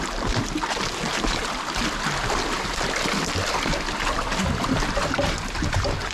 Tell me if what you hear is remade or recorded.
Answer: recorded